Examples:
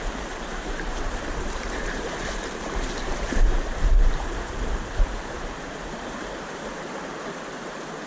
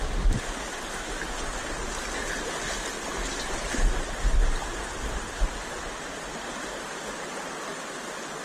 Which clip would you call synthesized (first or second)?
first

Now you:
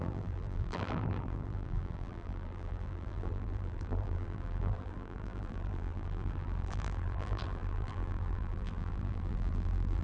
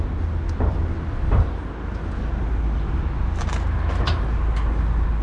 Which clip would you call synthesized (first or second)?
first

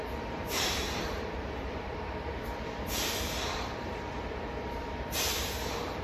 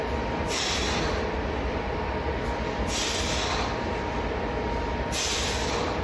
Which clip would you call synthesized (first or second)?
first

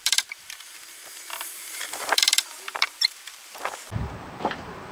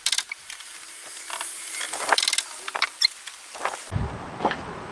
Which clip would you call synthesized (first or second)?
first